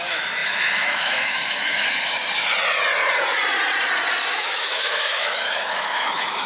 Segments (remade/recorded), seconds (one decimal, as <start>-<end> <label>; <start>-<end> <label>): 0.0-2.2 remade; 2.2-4.3 recorded; 4.3-6.5 remade